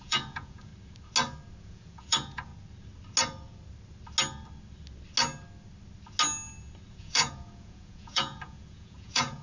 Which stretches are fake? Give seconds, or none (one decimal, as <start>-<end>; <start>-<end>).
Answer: 0.0-0.7; 1.6-2.5; 6.9-9.4